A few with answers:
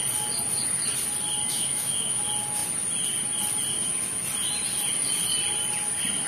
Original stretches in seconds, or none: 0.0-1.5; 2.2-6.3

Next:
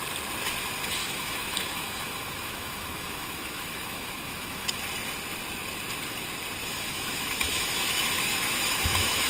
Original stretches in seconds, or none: 0.0-1.0; 4.8-6.6

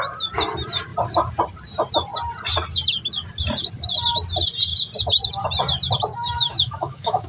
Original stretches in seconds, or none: 0.0-6.1

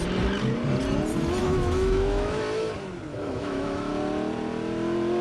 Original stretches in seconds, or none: 0.0-1.4; 2.4-3.1; 3.9-5.2

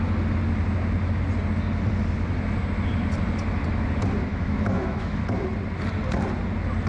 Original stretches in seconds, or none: 0.0-4.3; 5.2-6.9

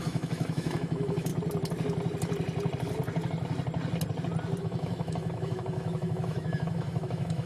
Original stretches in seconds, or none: 1.3-4.6

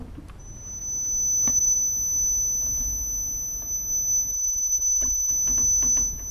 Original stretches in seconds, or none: 0.0-4.3; 5.3-6.3